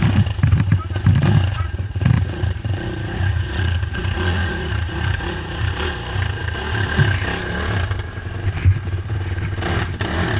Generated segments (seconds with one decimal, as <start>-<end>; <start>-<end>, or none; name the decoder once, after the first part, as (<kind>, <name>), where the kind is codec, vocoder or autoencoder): 1.5-5.7 (vocoder, Vocos)